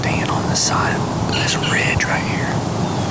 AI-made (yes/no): no